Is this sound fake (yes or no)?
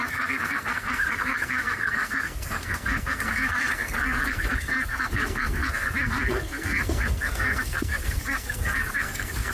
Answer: yes